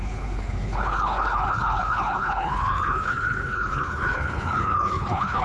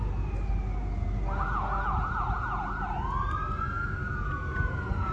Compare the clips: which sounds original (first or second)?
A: second